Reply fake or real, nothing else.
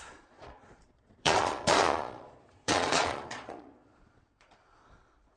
fake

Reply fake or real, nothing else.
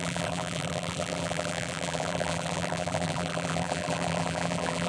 fake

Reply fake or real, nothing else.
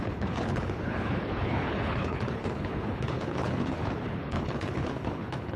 fake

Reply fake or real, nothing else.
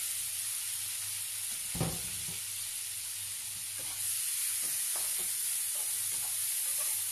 real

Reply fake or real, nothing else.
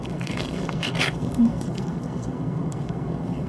fake